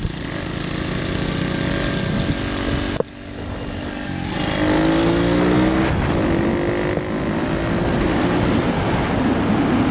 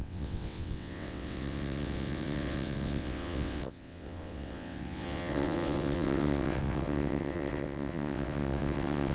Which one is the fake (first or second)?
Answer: second